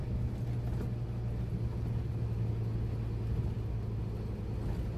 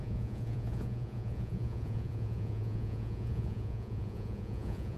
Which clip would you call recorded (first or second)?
first